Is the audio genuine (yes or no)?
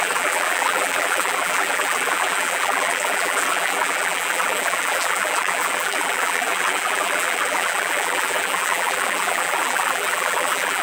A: no